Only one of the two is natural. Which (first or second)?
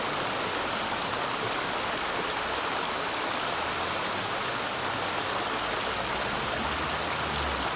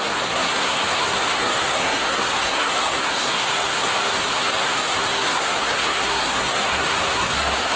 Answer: first